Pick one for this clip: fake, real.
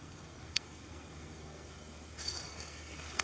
fake